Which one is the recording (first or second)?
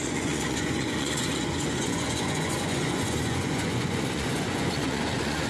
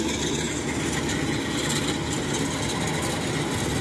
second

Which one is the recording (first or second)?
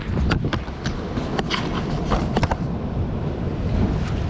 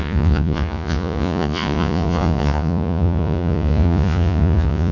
first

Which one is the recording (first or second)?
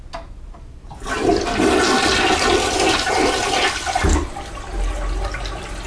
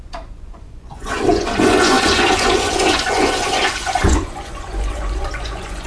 first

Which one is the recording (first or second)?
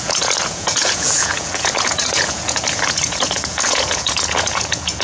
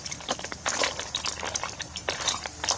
second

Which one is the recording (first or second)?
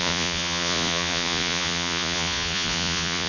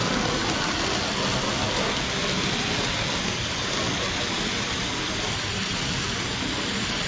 second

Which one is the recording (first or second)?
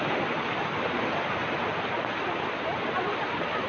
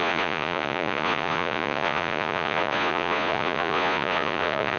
first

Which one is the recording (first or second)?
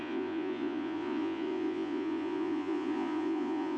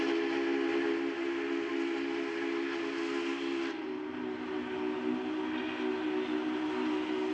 second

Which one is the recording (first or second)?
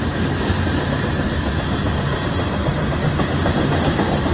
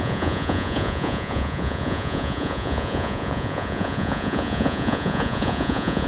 first